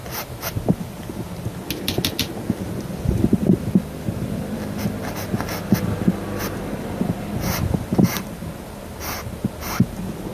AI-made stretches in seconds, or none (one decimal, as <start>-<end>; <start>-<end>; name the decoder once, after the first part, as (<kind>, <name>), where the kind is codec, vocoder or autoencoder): 0.0-0.6 (vocoder, BigVGAN v2)